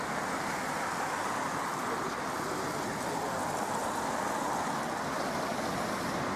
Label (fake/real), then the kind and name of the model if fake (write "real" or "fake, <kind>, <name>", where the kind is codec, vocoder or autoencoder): real